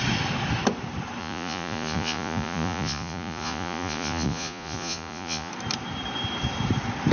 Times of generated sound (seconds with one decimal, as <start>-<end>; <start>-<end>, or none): 1.2-5.5